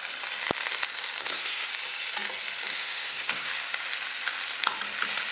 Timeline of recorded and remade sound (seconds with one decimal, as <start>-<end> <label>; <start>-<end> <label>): 0.0-1.2 recorded; 1.2-1.7 remade; 1.7-2.7 recorded; 2.7-3.5 remade; 3.5-5.3 recorded